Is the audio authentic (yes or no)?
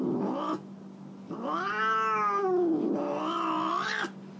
yes